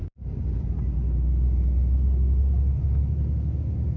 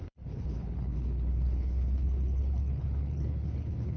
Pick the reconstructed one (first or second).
second